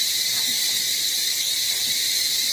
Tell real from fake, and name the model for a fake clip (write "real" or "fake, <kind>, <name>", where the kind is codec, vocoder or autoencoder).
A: fake, vocoder, BigVGAN v2